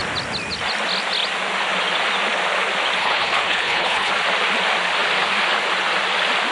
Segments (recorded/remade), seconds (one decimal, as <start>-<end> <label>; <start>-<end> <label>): 0.0-3.0 recorded; 3.0-4.1 remade; 4.1-6.5 recorded